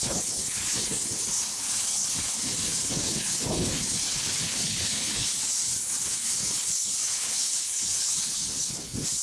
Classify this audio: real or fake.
fake